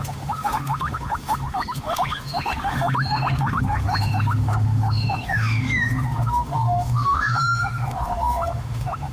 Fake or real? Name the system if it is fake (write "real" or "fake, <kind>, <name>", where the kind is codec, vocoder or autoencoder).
fake, autoencoder, DAC-VAE